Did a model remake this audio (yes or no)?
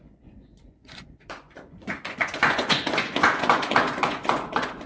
yes